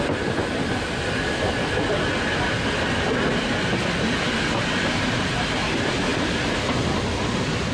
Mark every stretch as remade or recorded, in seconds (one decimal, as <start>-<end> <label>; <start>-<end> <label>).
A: 0.0-7.7 recorded